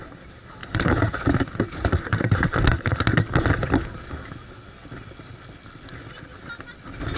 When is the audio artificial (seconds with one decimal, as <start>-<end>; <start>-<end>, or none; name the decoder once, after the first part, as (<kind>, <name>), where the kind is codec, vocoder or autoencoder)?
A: 0.6-2.3 (vocoder, BigVGAN v2)